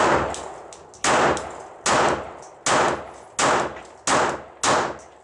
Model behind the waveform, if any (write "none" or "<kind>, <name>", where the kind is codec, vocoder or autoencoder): none